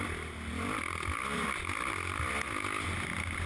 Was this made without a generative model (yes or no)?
yes